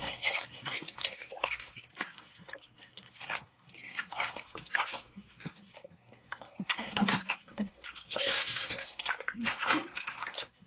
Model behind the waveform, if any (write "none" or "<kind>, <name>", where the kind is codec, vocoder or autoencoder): codec, SNAC